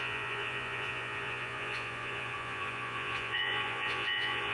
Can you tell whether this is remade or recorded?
remade